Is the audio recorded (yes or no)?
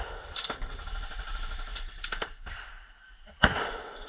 yes